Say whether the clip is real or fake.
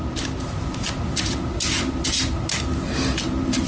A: real